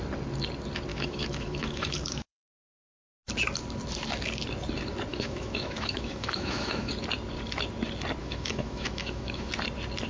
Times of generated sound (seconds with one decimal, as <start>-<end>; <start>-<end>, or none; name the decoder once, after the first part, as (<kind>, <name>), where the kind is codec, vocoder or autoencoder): 0.9-2.8 (autoencoder, DAC-VAE); 5.1-6.9; 8.2-9.5